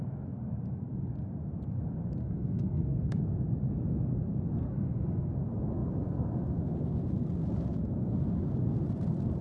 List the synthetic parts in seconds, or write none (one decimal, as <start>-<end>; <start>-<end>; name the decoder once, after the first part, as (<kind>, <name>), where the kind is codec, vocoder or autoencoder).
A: 2.2-3.2 (codec, SNAC); 4.7-5.3